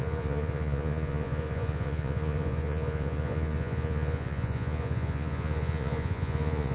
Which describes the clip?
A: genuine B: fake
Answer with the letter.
B